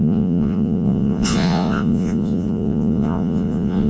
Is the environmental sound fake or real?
fake